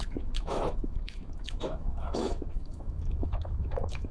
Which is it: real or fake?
fake